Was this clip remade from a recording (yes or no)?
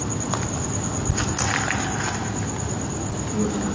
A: no